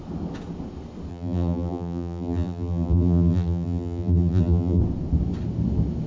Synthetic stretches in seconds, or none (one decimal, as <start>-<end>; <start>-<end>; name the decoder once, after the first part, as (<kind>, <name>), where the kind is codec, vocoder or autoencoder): 1.1-4.8 (vocoder, BigVGAN v2)